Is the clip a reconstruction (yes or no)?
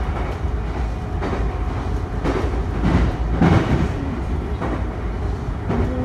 no